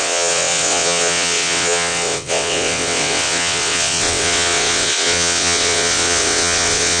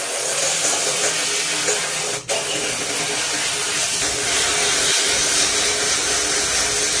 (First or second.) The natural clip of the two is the second